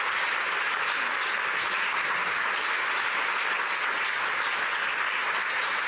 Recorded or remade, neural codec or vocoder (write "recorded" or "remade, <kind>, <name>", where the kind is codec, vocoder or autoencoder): recorded